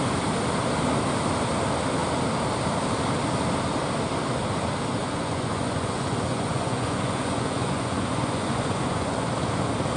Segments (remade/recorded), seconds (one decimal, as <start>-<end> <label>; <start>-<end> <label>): 0.0-5.0 recorded; 5.0-9.3 remade; 9.3-10.0 recorded